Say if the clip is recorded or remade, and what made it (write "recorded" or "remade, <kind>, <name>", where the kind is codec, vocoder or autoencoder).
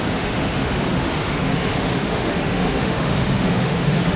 remade, autoencoder, DAC-VAE